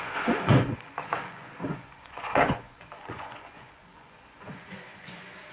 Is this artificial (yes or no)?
yes